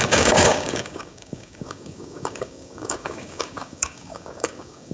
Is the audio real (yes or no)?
no